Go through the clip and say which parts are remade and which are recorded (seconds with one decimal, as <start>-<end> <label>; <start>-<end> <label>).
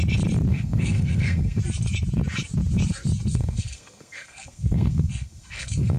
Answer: 0.0-0.5 recorded; 0.5-1.6 remade; 1.6-3.3 recorded; 3.3-6.0 remade